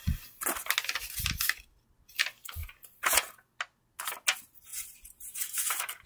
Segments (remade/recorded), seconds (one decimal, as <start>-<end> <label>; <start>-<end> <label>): 0.0-4.7 recorded; 4.7-6.1 remade